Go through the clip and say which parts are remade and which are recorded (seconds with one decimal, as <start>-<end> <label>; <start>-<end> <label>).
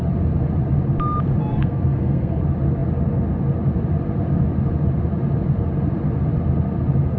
0.0-1.5 recorded; 1.5-2.4 remade; 2.4-7.2 recorded